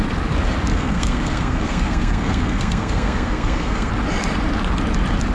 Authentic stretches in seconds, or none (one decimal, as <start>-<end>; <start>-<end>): 0.0-0.7; 3.9-5.3